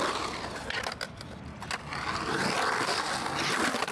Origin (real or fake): real